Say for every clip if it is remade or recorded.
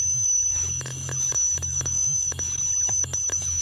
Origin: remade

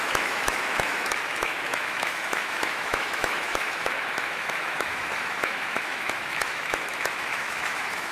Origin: remade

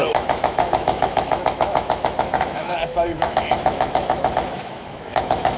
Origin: remade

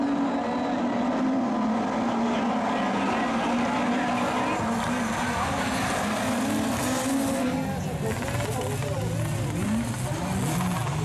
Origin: recorded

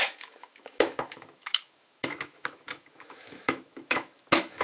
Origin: remade